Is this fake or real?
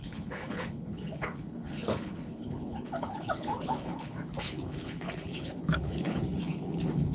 fake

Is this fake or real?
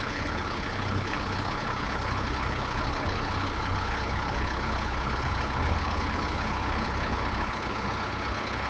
fake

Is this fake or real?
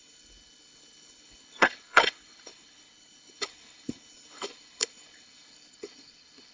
fake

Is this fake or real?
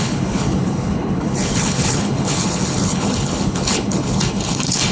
fake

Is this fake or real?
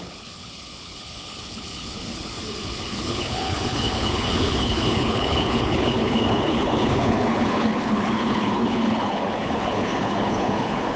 fake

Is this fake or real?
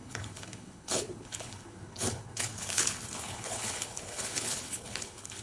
fake